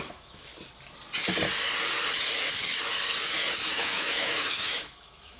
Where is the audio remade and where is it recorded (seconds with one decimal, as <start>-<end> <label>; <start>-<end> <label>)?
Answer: 0.0-0.5 remade; 0.5-3.7 recorded; 3.7-5.4 remade